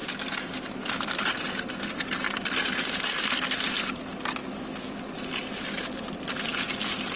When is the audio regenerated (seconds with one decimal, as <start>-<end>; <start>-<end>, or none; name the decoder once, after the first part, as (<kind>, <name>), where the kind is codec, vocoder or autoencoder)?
none